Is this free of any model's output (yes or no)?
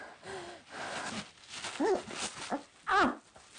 yes